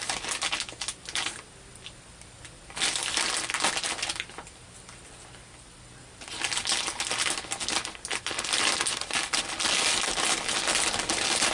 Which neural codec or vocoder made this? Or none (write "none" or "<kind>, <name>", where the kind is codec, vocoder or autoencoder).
none